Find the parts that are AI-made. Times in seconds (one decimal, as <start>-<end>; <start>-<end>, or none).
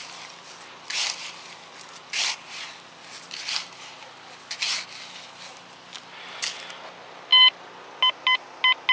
none